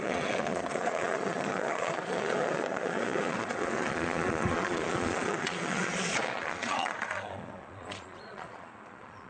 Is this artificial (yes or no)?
yes